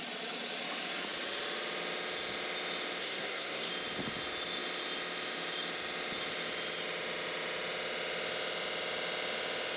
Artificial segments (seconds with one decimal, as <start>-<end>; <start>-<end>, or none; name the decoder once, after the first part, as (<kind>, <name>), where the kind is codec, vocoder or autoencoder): 3.0-3.7 (codec, SNAC)